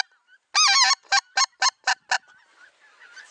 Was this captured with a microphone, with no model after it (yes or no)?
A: yes